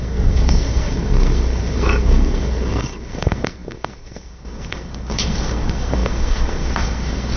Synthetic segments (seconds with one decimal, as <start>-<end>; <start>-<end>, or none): 0.0-7.4